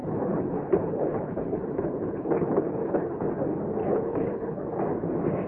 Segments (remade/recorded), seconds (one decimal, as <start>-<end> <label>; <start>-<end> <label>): 0.0-3.3 remade; 3.3-3.8 recorded; 3.8-4.8 remade; 4.8-5.5 recorded